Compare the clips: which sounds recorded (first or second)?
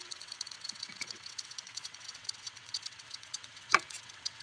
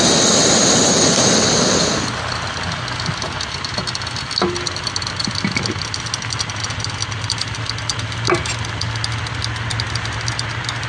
second